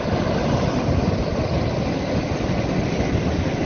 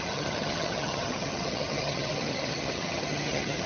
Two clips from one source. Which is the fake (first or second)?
second